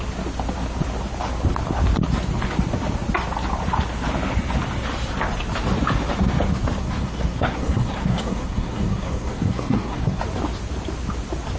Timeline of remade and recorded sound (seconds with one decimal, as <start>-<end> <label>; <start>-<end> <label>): 0.0-6.8 recorded; 6.8-10.2 remade; 10.2-11.6 recorded